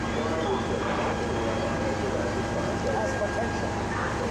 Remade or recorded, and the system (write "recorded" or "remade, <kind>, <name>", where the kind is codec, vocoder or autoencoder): recorded